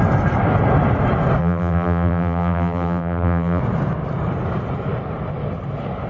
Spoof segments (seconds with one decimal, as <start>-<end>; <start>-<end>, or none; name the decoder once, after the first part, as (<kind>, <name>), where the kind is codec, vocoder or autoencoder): 1.4-3.6 (vocoder, BigVGAN v2)